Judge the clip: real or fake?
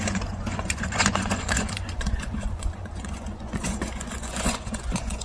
fake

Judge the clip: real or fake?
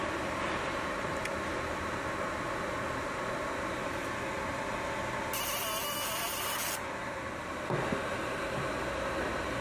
real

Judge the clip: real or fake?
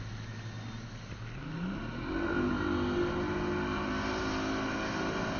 real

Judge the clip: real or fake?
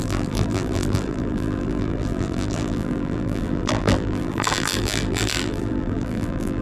fake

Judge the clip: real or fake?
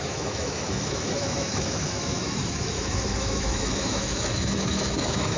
fake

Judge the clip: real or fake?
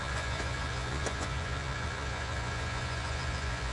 fake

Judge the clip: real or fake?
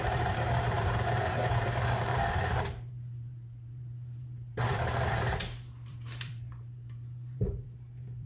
fake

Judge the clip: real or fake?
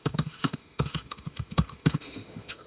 fake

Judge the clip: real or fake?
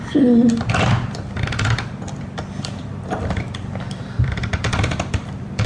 fake